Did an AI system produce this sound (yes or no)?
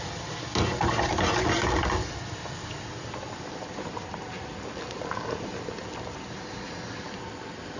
no